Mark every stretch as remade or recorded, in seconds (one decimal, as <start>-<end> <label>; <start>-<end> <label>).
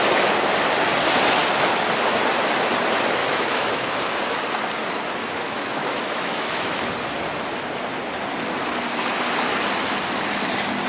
0.0-3.2 recorded; 3.2-3.9 remade; 3.9-5.2 recorded; 5.2-6.8 remade; 6.8-10.9 recorded